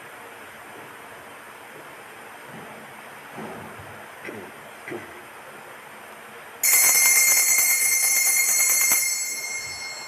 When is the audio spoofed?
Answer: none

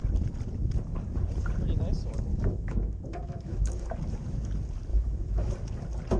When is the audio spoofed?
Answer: 2.3-4.0 (autoencoder, DAC-VAE); 4.9-5.5

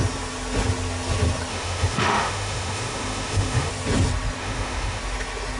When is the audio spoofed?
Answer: 1.5-3.7 (autoencoder, DAC-VAE); 4.4-5.0

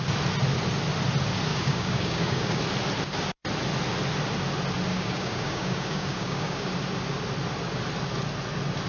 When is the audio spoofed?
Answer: 1.5-2.6 (codec, DAC); 4.9-6.7

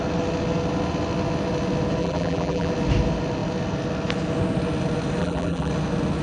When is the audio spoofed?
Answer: 2.0-2.7 (vocoder, BigVGAN v2); 5.2-5.7

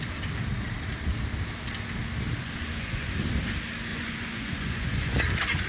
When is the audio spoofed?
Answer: 2.4-3.1 (vocoder, Vocos); 3.9-5.2